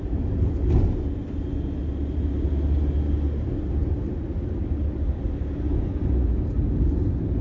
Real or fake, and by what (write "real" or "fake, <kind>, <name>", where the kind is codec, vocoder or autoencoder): real